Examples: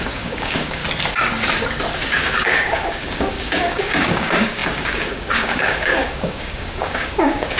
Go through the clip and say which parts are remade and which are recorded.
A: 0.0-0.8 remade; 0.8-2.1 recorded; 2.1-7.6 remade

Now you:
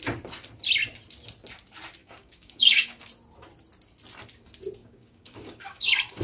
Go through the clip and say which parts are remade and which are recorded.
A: 0.0-2.0 recorded; 2.0-3.0 remade; 3.0-4.8 recorded; 4.8-6.2 remade

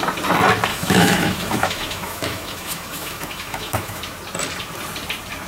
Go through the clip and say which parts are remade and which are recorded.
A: 0.0-0.7 recorded; 0.7-4.0 remade; 4.0-5.5 recorded

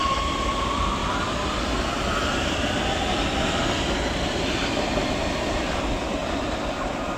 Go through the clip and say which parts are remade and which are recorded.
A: 0.0-7.2 remade

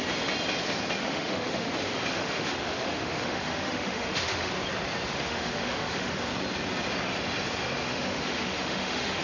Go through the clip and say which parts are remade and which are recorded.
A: 0.0-1.0 recorded; 1.0-1.7 remade; 1.7-2.1 recorded; 2.1-4.5 remade; 4.5-5.1 recorded; 5.1-6.1 remade; 6.1-7.8 recorded; 7.8-9.2 remade

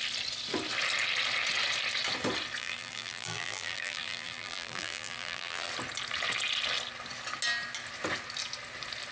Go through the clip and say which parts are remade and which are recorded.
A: 0.0-2.6 recorded; 2.6-5.7 remade; 5.7-9.1 recorded